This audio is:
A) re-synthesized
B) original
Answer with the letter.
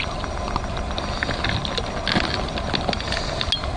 B